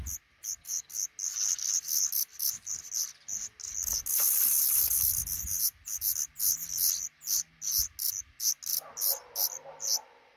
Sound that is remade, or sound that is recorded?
recorded